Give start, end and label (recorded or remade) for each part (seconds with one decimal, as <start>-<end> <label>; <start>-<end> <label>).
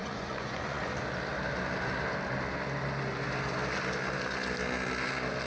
0.0-1.0 remade; 1.0-5.5 recorded